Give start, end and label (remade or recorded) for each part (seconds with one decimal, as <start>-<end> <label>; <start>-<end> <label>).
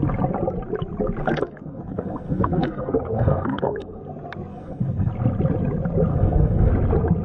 0.0-1.2 recorded; 1.2-4.0 remade; 4.0-4.5 recorded; 4.5-5.1 remade; 5.1-6.1 recorded; 6.1-6.7 remade; 6.7-7.2 recorded